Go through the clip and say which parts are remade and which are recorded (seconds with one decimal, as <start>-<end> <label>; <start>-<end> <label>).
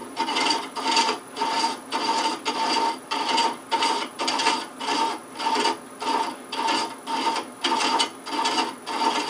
0.0-5.2 remade; 5.2-9.3 recorded